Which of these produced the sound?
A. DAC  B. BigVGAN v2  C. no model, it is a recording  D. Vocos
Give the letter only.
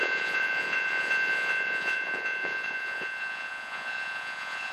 D